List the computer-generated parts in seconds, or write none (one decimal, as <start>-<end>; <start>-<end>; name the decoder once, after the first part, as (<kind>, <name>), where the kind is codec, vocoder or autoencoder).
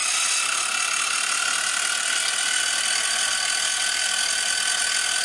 none